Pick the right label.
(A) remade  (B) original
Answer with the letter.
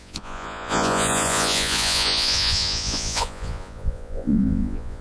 A